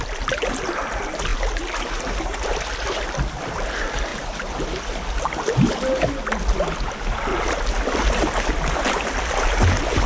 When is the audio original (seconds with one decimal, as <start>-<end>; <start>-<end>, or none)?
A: 0.0-10.1